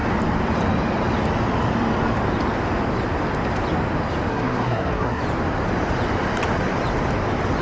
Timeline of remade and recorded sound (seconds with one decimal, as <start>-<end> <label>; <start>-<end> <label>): 0.0-4.3 recorded; 4.3-5.2 remade; 5.2-7.6 recorded